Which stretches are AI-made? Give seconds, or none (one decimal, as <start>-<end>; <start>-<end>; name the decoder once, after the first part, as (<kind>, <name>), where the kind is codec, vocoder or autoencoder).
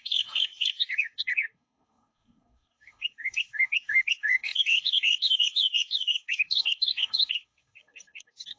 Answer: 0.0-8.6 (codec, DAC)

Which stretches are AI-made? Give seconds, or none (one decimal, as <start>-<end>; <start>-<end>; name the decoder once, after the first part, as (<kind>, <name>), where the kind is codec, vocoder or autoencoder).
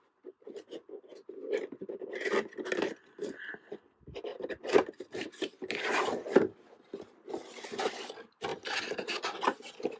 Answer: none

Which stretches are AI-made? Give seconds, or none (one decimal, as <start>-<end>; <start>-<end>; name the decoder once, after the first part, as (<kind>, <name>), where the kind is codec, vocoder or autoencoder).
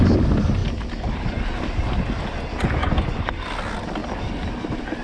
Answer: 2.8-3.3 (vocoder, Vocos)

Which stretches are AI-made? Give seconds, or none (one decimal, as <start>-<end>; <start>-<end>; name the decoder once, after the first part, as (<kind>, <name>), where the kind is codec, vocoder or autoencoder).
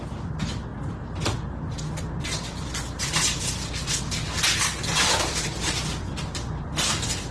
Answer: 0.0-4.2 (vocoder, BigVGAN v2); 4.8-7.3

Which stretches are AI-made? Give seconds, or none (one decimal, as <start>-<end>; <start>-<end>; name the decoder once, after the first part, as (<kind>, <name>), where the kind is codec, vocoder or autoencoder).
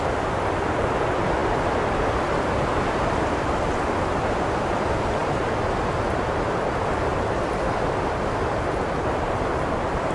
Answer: 0.0-5.2 (vocoder, BigVGAN v2); 6.0-7.1; 8.9-10.1